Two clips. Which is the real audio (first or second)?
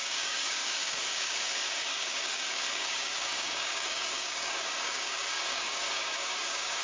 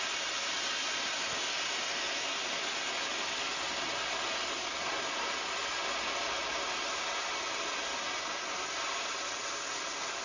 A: second